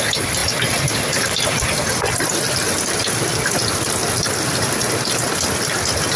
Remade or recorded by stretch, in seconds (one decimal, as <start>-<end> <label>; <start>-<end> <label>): 0.0-6.2 recorded

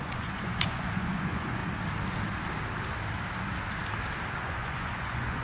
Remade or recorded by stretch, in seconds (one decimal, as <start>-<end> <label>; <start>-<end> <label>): 0.0-1.6 remade; 1.6-4.3 recorded; 4.3-5.4 remade

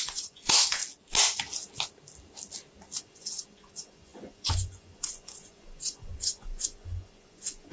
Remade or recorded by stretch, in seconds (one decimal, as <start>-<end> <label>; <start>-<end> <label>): 0.0-0.8 remade; 0.8-3.0 recorded; 3.0-7.7 remade

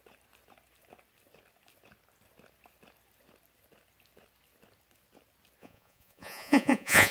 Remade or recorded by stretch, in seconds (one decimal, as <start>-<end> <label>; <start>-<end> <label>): 0.0-5.6 recorded; 5.6-7.1 remade

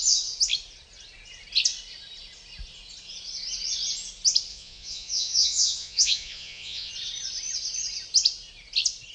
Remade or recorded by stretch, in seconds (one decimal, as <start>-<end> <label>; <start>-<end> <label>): 0.0-4.5 recorded; 4.5-6.9 remade; 6.9-9.1 recorded

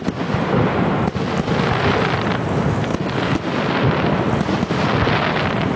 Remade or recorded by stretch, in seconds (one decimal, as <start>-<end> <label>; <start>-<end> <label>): 0.0-5.8 recorded